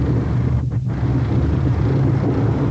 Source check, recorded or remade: recorded